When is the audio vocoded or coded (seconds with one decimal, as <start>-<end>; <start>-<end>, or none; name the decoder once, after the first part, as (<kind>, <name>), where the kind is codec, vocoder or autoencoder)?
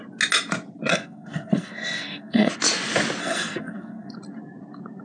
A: 0.9-2.5 (codec, SNAC); 3.2-4.1